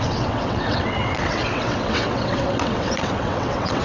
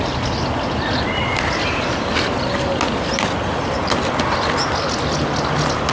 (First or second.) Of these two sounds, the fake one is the first